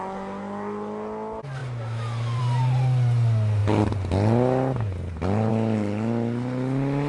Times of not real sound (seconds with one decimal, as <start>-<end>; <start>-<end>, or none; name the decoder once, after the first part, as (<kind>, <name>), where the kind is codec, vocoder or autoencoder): none